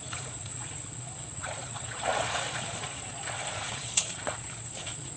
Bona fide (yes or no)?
no